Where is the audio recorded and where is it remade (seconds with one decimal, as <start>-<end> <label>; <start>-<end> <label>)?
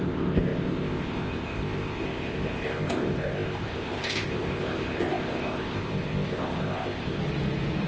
0.0-7.2 remade; 7.2-7.9 recorded